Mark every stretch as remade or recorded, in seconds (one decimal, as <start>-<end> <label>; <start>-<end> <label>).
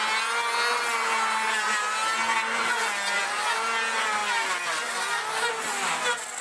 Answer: 0.0-6.4 recorded